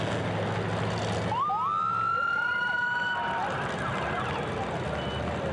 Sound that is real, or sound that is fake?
real